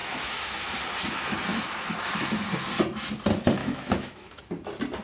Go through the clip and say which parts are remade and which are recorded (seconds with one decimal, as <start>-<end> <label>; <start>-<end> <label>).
0.0-0.7 remade; 0.7-3.6 recorded; 3.6-4.4 remade; 4.4-5.0 recorded